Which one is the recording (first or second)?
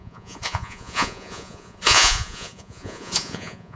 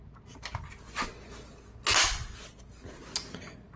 second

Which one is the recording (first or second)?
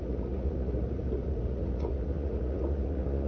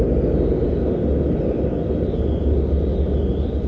second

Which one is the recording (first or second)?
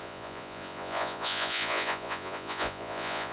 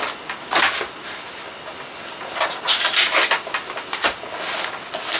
second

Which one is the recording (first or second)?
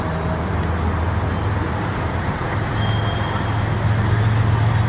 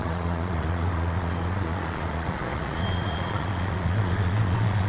first